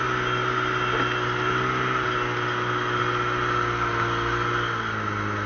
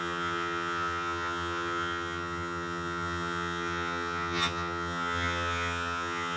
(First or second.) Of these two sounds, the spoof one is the second